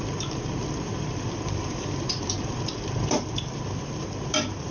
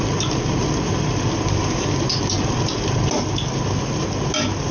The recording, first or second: second